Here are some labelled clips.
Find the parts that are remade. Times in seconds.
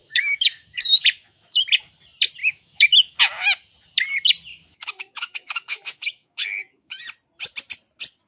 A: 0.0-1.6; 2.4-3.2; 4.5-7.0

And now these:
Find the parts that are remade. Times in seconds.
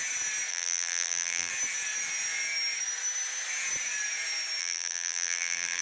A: 0.5-1.5; 4.6-5.8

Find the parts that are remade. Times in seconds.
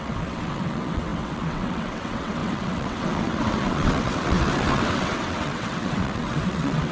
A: 0.0-6.9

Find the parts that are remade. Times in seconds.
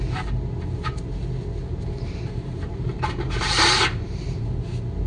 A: 1.6-4.5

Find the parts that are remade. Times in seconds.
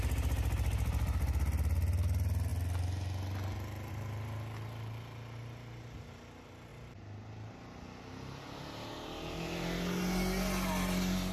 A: none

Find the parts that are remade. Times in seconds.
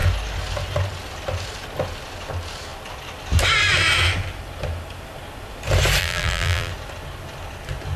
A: 6.0-6.7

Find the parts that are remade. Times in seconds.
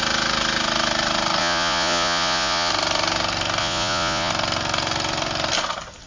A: 1.4-2.7; 3.6-4.3